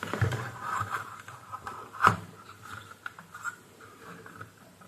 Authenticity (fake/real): fake